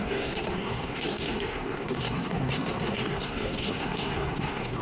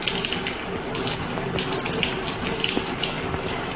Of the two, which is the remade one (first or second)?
first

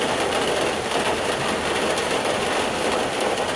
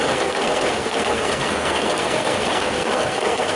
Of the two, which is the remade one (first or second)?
second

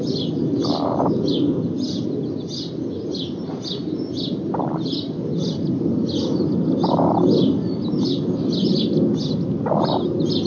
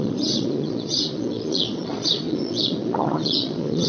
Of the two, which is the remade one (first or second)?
second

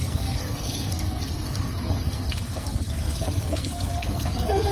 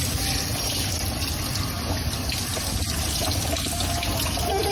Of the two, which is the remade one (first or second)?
first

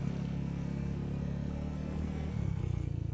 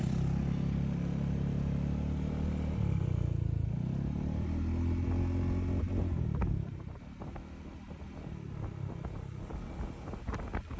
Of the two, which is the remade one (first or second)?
first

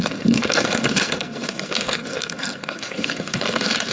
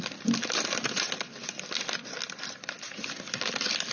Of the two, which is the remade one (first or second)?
first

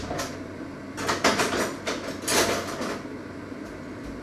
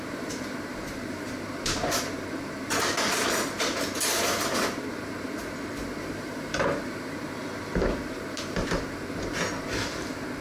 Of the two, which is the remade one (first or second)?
second